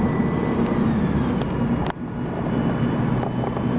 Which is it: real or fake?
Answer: real